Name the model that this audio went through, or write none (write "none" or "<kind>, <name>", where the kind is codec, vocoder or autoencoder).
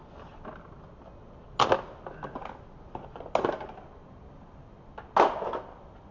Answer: none